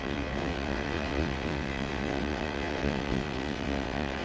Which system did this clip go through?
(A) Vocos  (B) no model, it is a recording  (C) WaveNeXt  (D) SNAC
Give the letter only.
C